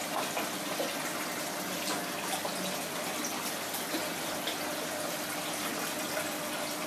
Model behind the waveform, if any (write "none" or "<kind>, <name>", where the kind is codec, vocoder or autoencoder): none